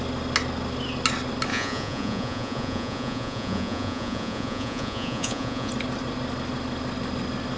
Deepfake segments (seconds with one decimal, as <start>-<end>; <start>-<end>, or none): 1.5-5.7